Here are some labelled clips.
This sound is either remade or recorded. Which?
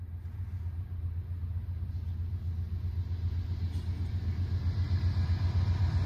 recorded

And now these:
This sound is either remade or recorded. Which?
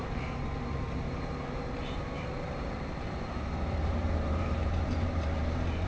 remade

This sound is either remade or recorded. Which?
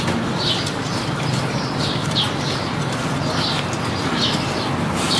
recorded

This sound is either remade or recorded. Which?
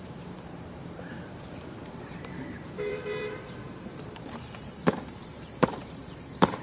remade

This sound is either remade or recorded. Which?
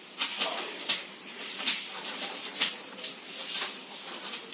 remade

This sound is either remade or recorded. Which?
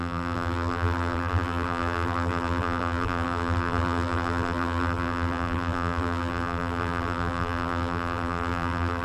remade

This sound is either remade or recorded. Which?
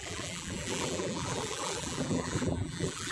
remade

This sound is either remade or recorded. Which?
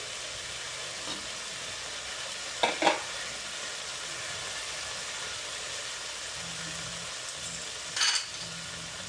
recorded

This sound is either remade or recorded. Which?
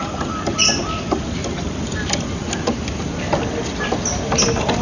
recorded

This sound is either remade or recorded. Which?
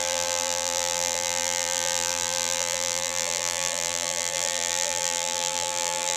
remade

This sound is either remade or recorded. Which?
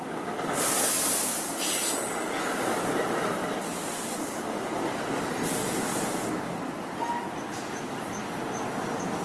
recorded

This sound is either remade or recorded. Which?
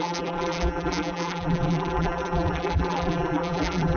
remade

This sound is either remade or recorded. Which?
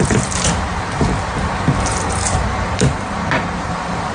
remade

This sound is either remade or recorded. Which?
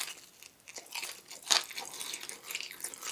recorded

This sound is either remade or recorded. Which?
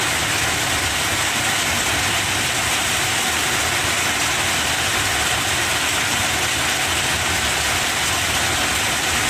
recorded